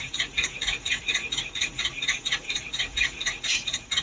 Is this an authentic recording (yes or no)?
no